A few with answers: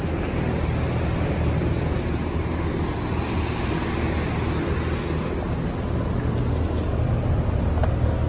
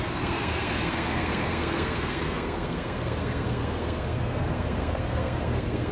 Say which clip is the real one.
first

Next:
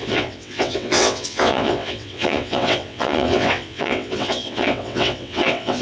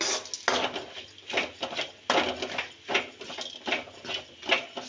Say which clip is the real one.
second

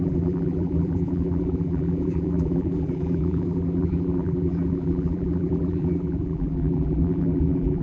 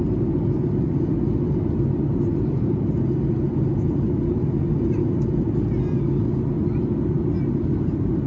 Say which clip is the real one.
second